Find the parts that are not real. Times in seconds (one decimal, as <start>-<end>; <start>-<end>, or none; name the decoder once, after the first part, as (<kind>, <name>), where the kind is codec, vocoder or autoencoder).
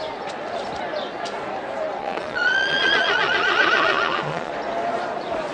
2.0-4.5 (vocoder, Vocos)